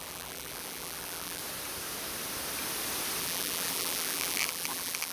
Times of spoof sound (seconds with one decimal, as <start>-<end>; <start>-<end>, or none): 0.0-1.4; 3.2-5.1